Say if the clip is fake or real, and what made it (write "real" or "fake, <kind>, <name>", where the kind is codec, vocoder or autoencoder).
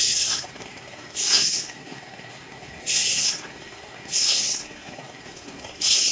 fake, codec, SNAC